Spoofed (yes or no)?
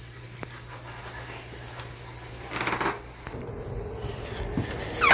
no